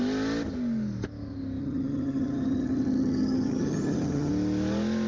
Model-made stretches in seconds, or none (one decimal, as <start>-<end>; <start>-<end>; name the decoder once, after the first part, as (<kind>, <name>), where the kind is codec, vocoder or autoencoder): 1.6-4.3 (vocoder, HiFi-GAN)